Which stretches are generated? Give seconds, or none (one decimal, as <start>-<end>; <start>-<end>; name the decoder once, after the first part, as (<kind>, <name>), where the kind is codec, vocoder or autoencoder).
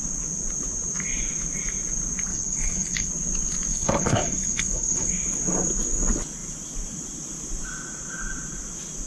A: 2.3-3.1 (codec, HILCodec); 3.7-5.1